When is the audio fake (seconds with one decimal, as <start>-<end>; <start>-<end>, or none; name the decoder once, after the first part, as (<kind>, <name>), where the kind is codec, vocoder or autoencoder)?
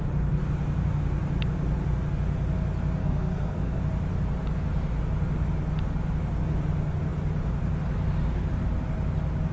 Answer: 3.0-3.8 (codec, SNAC)